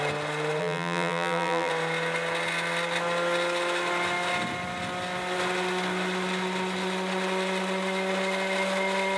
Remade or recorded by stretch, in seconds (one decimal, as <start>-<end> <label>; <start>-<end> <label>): 0.0-0.6 recorded; 0.6-1.7 remade; 1.7-9.2 recorded